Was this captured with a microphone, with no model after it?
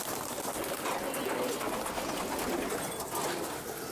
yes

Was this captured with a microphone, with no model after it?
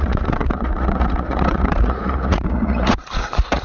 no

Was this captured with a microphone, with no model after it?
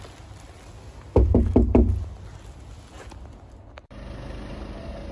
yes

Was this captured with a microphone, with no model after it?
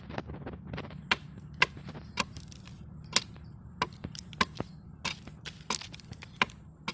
yes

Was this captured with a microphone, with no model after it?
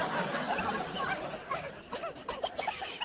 no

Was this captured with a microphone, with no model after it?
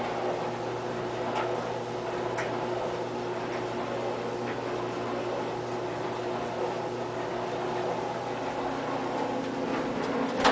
yes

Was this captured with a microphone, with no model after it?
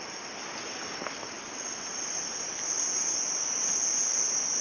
yes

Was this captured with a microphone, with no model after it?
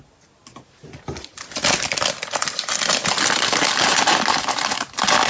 yes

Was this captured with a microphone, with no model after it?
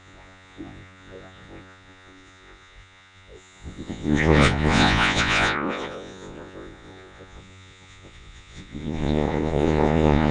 no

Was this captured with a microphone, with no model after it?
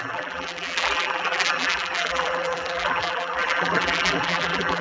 no